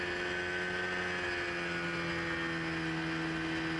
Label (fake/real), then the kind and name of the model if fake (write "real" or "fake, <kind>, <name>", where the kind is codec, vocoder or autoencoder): real